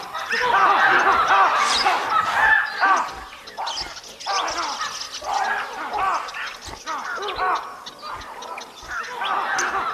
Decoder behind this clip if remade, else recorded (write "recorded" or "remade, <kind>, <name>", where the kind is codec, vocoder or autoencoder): recorded